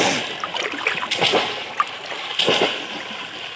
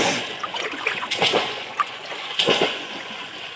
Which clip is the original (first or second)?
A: first